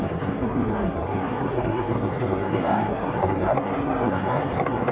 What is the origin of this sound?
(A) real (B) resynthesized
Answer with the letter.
B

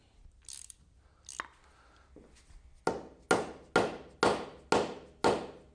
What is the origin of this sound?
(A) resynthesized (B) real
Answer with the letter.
B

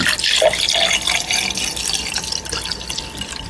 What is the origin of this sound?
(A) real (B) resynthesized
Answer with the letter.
A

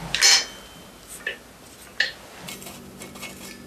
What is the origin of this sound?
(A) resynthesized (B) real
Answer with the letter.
B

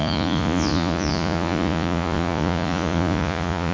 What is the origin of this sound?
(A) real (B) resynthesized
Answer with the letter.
B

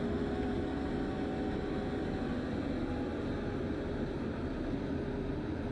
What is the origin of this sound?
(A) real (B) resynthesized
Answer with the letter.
A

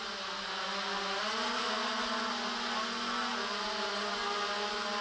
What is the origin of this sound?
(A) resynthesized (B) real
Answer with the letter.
B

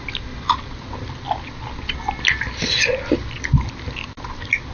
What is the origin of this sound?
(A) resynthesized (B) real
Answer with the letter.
B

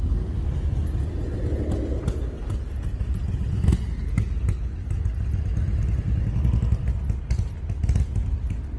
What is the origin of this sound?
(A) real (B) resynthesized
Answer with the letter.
A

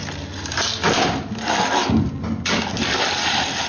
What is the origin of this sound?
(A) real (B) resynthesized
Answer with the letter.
A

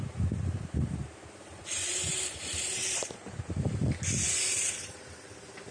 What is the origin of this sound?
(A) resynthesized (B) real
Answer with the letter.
A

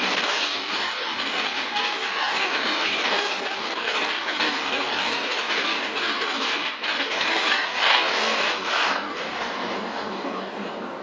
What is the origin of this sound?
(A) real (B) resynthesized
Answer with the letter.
B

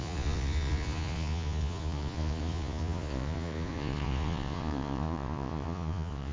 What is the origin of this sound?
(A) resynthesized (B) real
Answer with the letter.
A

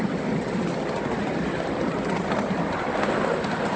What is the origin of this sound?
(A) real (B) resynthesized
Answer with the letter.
A